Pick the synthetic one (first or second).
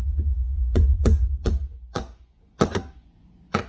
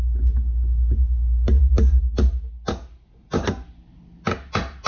first